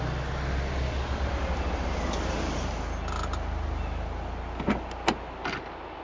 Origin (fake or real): real